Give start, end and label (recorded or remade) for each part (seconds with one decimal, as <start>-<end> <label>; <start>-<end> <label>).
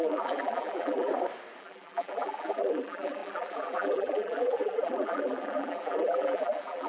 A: 0.0-1.1 remade; 1.1-1.6 recorded; 1.6-6.9 remade